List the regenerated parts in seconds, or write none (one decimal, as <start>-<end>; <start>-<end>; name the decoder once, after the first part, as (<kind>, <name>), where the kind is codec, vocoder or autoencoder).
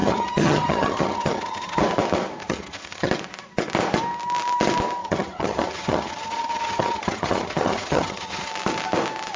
0.0-1.8 (vocoder, HiFi-GAN); 2.4-3.1; 5.0-8.5